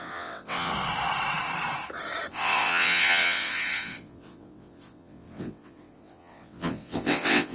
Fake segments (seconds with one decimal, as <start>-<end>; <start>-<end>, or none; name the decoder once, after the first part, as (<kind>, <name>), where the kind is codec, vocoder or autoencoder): 0.0-0.7 (vocoder, WaveNeXt); 2.3-7.5